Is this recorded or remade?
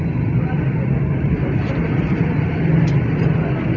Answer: remade